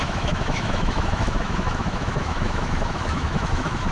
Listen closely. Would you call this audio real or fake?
fake